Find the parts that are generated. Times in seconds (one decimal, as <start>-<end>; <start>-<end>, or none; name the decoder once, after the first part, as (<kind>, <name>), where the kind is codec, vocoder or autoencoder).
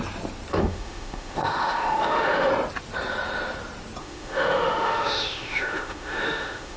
0.5-2.5 (autoencoder, DAC-VAE); 4.0-6.8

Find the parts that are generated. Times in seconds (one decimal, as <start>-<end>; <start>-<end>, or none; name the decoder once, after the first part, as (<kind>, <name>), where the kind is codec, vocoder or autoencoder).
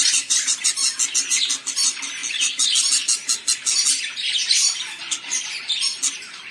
0.0-0.8 (vocoder, BigVGAN v2); 1.7-2.2; 5.6-6.5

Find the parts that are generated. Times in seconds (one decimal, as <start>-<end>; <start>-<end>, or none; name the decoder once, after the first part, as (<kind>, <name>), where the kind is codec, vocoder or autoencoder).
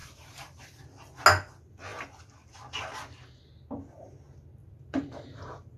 0.0-0.6 (vocoder, BigVGAN v2); 4.6-5.8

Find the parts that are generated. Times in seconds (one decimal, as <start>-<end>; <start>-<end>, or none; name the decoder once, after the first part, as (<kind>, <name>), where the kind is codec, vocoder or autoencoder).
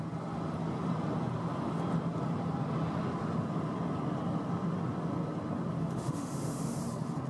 5.8-6.8 (autoencoder, DAC-VAE)